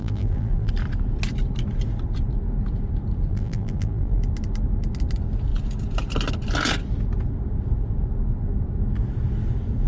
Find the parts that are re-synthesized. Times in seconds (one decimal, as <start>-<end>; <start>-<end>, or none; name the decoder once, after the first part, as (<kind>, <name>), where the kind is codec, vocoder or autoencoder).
0.0-0.7 (vocoder, BigVGAN v2); 3.3-4.2